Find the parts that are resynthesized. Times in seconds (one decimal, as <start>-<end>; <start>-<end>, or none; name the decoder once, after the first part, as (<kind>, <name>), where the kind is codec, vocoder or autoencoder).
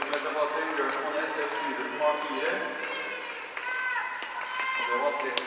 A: none